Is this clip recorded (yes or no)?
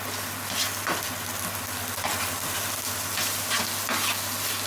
yes